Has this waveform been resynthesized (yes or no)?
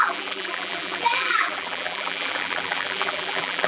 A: yes